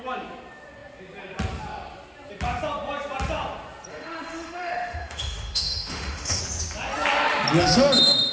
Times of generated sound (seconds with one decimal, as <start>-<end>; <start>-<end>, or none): 3.9-6.4